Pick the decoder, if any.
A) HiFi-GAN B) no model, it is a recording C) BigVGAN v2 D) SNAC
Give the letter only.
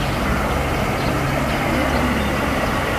B